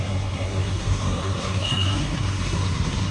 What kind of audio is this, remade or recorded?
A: remade